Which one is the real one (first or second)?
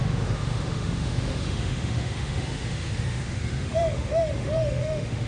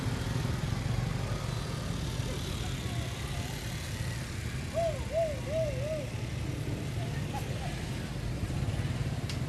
second